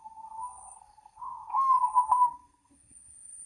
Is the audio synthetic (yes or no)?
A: yes